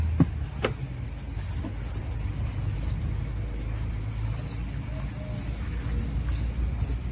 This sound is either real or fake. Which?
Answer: real